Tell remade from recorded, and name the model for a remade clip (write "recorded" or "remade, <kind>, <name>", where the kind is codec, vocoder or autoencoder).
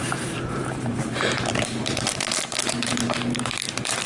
remade, vocoder, BigVGAN v2